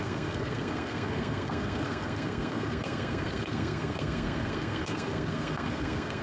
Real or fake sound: fake